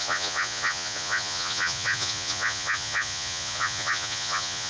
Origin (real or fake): fake